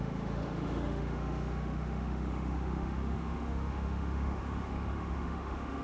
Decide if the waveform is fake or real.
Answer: fake